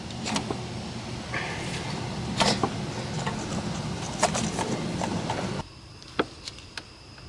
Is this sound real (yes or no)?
yes